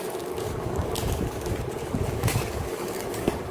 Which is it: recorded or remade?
remade